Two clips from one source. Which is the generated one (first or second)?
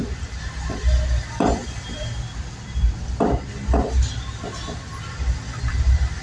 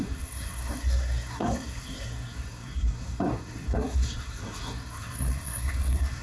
second